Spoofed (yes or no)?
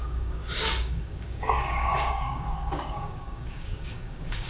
yes